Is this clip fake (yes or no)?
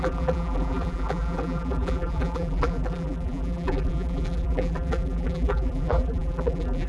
yes